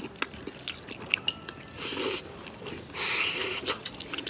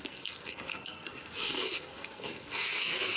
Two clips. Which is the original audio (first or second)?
first